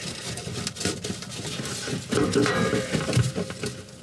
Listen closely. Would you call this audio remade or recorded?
recorded